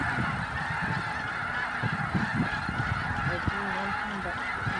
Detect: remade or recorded recorded